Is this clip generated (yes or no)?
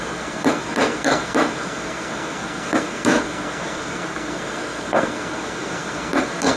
yes